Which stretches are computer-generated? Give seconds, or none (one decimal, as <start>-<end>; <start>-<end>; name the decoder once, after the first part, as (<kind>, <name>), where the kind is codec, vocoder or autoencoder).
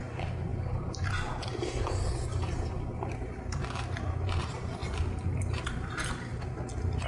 0.0-4.8 (vocoder, BigVGAN v2); 5.4-6.3